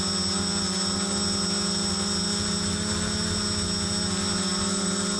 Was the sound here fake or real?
real